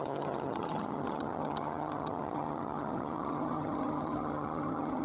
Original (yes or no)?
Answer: no